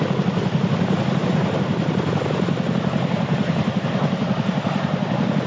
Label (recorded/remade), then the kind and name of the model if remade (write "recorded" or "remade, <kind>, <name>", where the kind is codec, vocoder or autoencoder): recorded